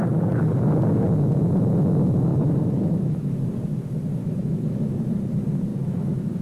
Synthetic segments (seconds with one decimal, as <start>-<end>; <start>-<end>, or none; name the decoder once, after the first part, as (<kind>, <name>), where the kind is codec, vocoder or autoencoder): 2.3-3.3 (autoencoder, DAC-VAE); 4.2-4.9; 5.7-6.4